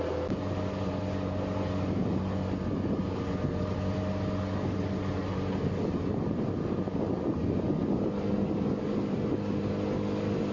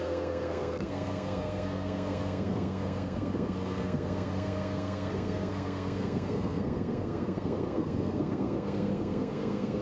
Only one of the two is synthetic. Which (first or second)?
second